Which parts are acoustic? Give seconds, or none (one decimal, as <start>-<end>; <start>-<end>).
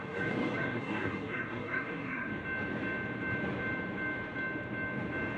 2.3-5.4